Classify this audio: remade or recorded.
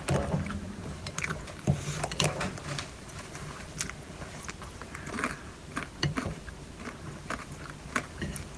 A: recorded